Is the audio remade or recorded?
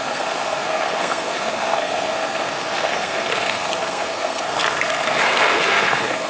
remade